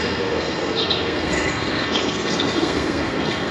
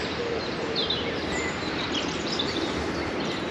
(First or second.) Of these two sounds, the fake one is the first